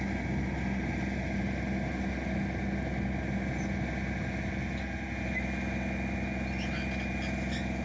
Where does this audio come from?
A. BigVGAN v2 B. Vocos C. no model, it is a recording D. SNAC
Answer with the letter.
C